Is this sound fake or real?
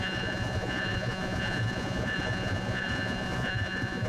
fake